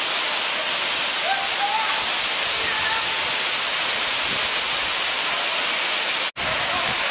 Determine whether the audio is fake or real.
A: real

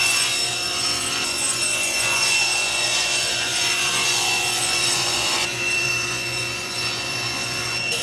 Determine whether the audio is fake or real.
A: fake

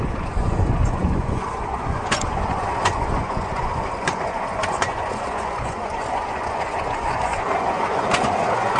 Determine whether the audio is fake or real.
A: fake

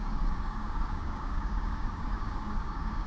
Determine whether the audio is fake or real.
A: fake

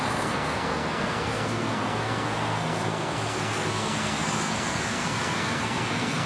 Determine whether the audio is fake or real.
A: fake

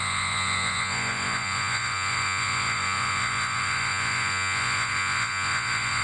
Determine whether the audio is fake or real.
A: fake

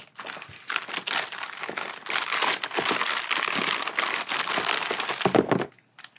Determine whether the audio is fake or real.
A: real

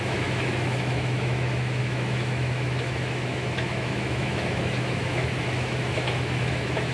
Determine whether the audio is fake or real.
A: fake